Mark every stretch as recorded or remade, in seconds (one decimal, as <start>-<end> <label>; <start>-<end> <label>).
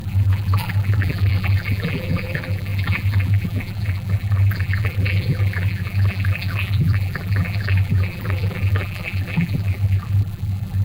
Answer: 0.0-10.8 remade